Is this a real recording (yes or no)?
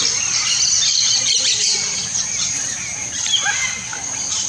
yes